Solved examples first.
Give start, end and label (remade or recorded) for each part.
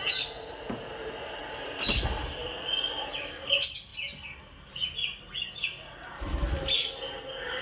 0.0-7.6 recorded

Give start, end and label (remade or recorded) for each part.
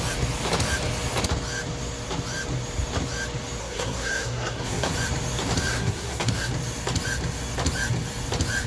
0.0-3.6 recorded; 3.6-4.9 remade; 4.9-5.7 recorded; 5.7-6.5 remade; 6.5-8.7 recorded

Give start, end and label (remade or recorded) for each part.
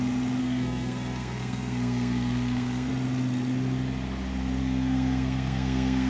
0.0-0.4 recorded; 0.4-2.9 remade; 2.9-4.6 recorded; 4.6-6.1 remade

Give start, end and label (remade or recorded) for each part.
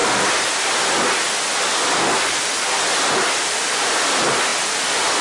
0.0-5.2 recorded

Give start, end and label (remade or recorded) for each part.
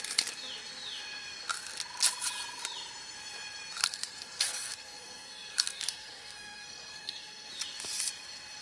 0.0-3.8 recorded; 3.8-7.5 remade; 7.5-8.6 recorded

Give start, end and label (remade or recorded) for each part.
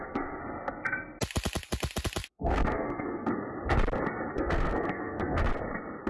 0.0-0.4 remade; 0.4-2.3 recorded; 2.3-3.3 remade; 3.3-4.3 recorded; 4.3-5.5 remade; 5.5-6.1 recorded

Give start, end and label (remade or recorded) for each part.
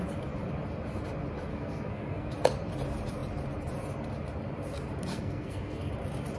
0.0-1.5 recorded; 1.5-2.3 remade; 2.3-5.1 recorded; 5.1-5.9 remade; 5.9-6.4 recorded